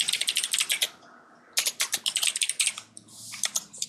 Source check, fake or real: real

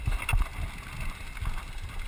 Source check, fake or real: real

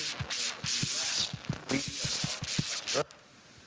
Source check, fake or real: real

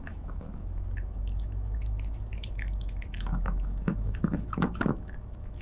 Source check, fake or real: fake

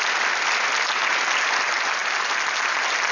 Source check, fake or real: real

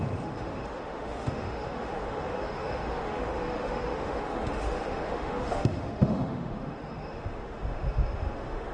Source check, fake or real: fake